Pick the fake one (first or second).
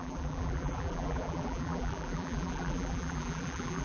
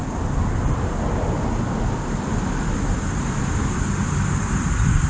first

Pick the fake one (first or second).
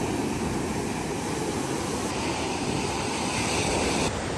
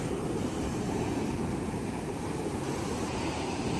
second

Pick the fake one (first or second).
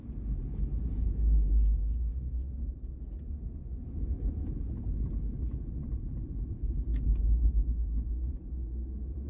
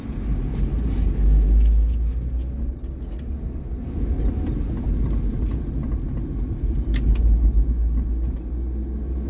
first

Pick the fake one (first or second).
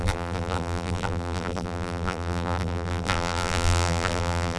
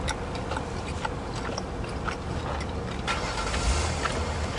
first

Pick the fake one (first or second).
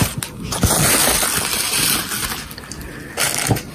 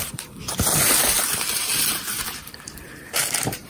second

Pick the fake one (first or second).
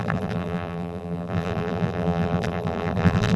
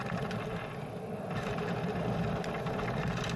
first